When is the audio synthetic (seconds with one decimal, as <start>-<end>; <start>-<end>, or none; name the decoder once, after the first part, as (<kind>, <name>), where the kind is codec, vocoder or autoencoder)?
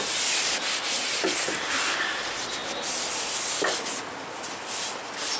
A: none